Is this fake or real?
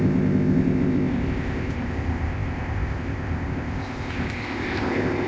fake